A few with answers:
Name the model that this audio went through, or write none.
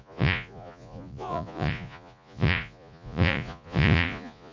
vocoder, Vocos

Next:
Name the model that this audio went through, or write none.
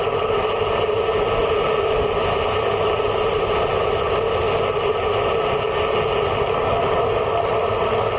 none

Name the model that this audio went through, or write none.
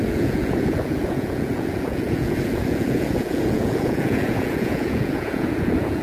vocoder, Vocos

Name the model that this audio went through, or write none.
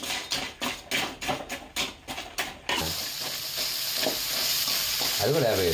none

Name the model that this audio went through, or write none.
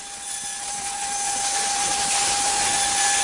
none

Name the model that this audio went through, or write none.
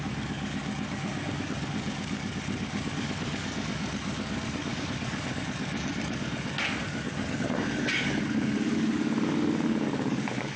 codec, DAC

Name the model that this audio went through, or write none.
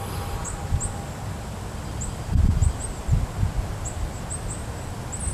none